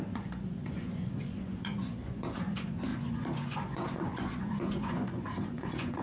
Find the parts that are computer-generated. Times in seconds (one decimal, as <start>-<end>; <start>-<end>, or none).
0.0-6.0